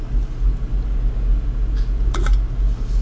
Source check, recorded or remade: recorded